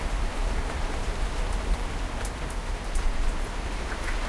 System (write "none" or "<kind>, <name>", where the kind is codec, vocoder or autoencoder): none